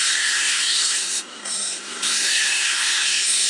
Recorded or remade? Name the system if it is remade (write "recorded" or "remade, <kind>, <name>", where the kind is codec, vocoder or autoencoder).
remade, codec, SNAC